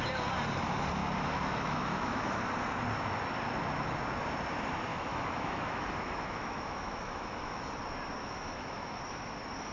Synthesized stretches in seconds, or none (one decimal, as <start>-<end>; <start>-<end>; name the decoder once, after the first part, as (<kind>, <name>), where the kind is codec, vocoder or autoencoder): 1.0-2.4 (autoencoder, DAC-VAE); 4.9-7.6; 8.2-9.0